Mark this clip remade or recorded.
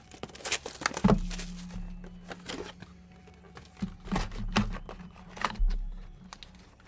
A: recorded